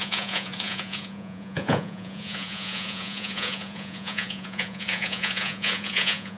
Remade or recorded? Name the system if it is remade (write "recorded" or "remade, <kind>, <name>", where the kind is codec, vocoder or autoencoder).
remade, vocoder, Vocos